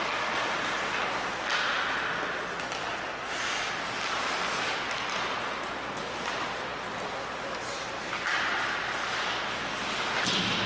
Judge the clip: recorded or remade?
recorded